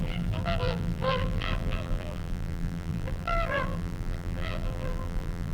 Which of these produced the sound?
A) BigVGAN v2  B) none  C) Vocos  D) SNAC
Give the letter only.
A